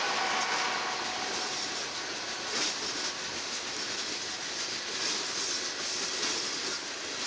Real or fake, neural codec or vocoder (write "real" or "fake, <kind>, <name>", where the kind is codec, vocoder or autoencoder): real